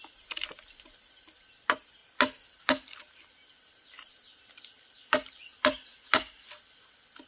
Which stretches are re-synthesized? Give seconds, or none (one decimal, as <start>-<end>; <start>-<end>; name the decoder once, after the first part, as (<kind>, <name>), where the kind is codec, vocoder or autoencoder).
0.0-7.3 (vocoder, BigVGAN v2)